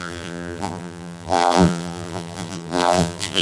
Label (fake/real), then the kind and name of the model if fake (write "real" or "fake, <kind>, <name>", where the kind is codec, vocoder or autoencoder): fake, vocoder, BigVGAN v2